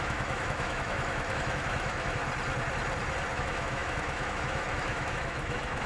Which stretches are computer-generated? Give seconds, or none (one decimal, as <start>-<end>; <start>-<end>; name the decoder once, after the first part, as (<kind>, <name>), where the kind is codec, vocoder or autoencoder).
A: 0.0-2.2 (autoencoder, DAC-VAE); 3.3-5.9

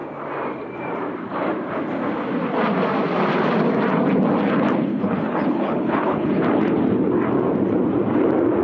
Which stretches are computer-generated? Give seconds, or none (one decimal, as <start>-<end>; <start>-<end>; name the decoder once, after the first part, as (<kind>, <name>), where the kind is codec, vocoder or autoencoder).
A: 4.9-6.3 (codec, HILCodec)

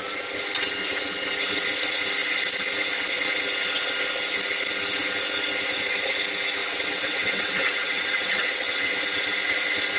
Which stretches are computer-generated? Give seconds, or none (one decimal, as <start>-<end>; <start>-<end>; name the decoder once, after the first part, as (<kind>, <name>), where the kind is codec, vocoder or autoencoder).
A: 6.6-8.9 (vocoder, WaveNeXt)